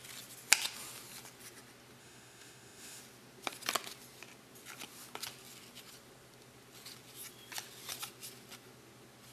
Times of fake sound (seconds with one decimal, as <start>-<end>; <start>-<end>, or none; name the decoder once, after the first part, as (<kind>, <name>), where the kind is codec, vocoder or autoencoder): 2.0-3.0 (autoencoder, DAC-VAE)